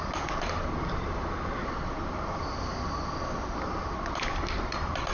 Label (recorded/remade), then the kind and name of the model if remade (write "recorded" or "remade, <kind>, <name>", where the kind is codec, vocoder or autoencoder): recorded